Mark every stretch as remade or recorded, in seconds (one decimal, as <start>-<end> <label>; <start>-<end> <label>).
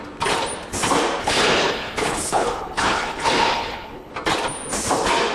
0.0-1.2 recorded; 1.2-4.1 remade; 4.1-5.3 recorded